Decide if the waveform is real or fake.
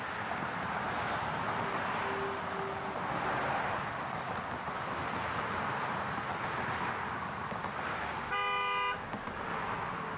real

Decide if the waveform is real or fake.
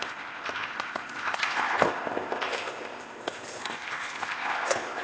fake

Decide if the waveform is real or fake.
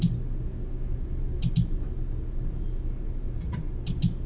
real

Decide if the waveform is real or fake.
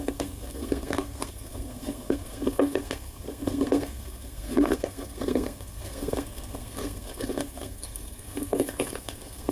fake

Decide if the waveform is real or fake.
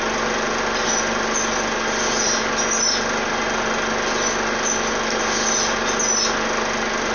real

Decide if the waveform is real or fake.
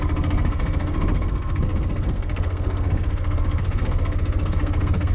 fake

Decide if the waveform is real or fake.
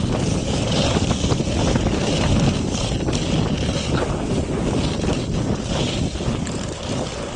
real